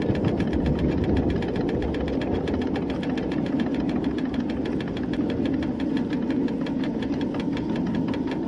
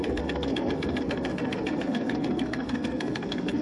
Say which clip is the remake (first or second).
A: second